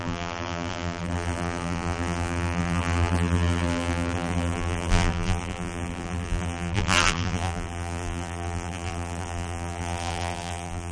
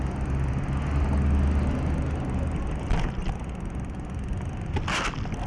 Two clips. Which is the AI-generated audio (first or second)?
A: first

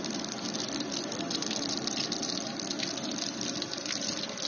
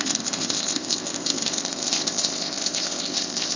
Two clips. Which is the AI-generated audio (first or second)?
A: second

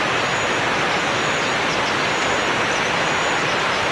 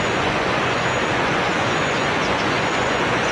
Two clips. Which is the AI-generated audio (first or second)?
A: second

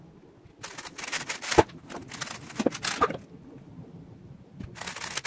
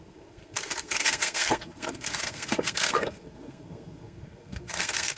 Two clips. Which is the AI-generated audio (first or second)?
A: second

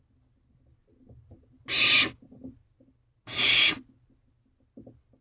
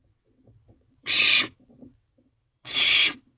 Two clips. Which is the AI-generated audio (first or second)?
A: second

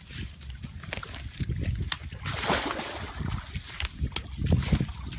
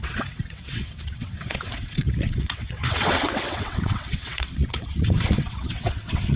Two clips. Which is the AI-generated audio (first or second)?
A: second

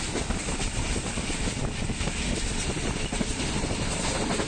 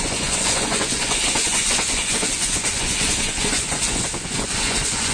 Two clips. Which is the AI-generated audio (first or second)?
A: second